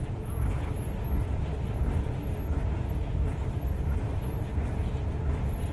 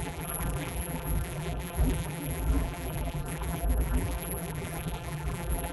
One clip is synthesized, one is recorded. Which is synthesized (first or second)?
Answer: second